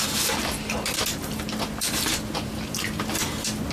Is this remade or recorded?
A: recorded